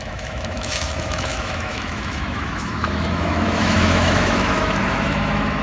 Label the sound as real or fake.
fake